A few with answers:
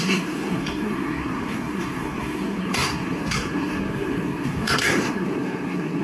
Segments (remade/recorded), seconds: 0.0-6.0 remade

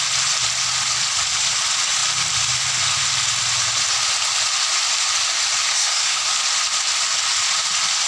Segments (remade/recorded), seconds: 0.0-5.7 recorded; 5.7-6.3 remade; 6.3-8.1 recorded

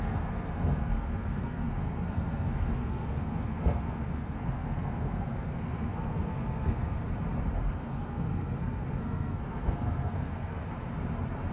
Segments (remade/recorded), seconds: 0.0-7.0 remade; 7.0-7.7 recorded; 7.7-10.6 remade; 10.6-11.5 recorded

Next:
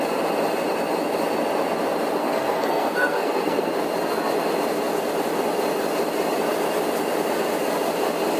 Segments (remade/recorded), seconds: 0.0-2.2 recorded; 2.2-3.7 remade; 3.7-8.4 recorded

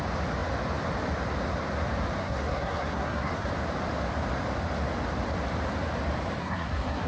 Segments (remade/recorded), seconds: 0.0-2.2 recorded; 2.2-3.5 remade; 3.5-6.4 recorded; 6.4-7.1 remade